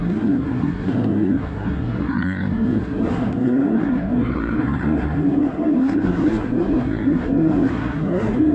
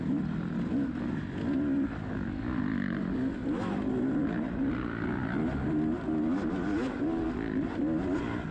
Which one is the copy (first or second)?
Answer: first